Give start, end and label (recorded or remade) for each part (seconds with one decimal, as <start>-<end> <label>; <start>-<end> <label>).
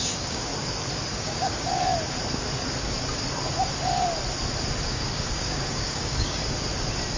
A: 0.0-0.5 remade; 0.5-1.1 recorded; 1.1-1.7 remade; 1.7-4.8 recorded; 4.8-6.4 remade; 6.4-7.2 recorded